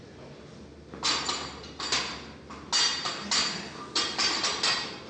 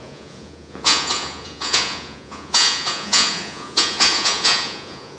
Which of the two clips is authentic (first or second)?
first